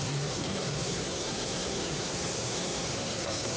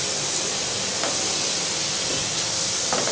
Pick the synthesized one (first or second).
first